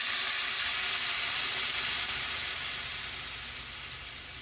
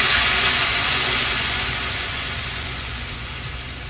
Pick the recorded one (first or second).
first